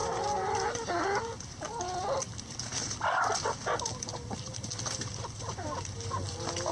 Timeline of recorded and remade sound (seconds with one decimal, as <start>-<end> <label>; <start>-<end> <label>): 0.0-1.8 remade; 1.8-2.7 recorded; 2.7-5.3 remade; 5.3-6.7 recorded